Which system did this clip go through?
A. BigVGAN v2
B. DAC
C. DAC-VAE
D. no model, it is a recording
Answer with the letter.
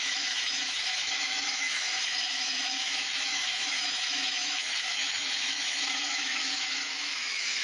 C